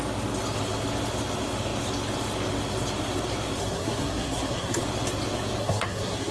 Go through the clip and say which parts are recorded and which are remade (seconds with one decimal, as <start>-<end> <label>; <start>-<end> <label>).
0.0-3.6 recorded; 3.6-4.8 remade; 4.8-5.6 recorded; 5.6-6.3 remade